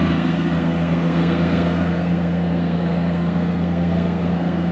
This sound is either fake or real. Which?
fake